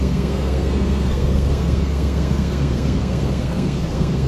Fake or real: fake